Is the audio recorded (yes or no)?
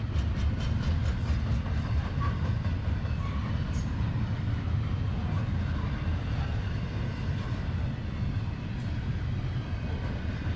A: yes